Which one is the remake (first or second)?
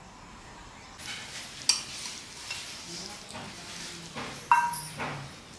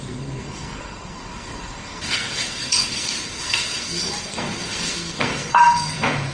second